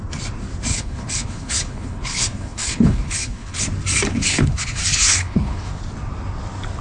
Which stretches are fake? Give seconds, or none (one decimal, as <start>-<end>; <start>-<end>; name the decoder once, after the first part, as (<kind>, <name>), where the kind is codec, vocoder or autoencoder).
0.7-3.6 (codec, HILCodec); 4.1-5.8